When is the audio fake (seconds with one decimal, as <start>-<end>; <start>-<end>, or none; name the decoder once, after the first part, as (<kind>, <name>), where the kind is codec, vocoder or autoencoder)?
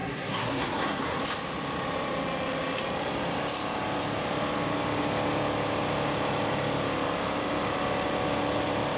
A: 0.0-1.2 (codec, SNAC)